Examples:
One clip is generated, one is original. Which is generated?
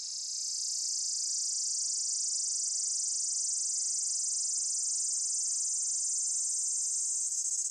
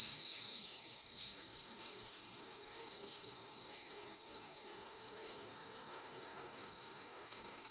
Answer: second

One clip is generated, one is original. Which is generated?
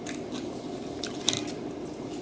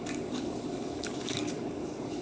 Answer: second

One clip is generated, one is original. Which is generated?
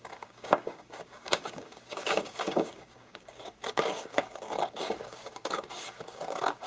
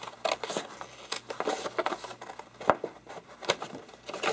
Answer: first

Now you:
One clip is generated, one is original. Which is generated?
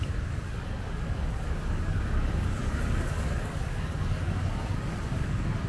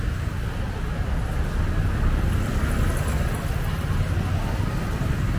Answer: first